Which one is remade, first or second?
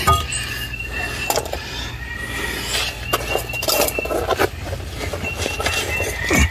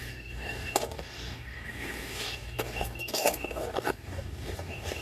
second